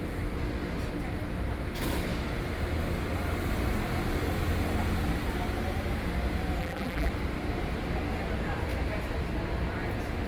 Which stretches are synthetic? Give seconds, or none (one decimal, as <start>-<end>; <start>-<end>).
6.6-7.1